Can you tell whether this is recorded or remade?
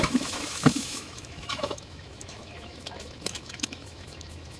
remade